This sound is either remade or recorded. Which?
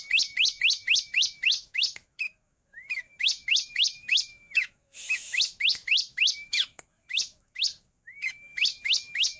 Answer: remade